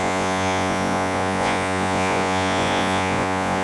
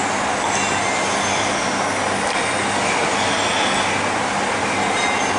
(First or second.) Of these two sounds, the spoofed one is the first